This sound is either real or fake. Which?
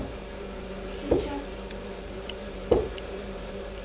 fake